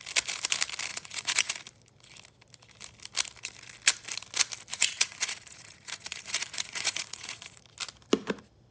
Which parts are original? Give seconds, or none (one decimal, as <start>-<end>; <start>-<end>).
0.0-0.9; 1.5-4.7; 7.6-8.7